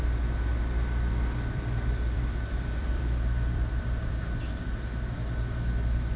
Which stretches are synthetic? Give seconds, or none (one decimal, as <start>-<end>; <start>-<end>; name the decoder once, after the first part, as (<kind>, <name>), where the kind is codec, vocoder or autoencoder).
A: 0.5-4.2 (vocoder, BigVGAN v2)